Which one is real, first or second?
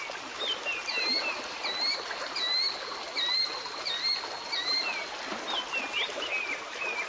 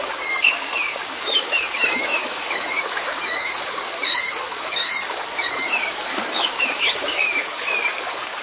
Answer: first